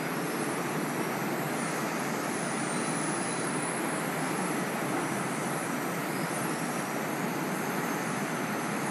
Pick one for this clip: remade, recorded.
remade